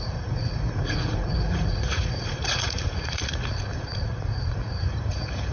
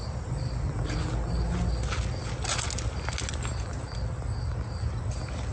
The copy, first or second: first